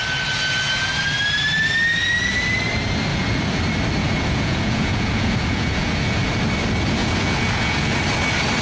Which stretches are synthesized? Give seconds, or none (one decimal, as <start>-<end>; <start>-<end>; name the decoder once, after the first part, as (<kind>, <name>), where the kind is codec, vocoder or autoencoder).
3.1-3.6 (vocoder, Vocos); 4.0-6.3; 7.0-8.0